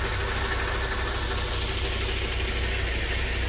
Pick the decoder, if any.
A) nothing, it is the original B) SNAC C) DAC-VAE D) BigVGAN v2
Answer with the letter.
A